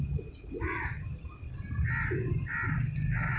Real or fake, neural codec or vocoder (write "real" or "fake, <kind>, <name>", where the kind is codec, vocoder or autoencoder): real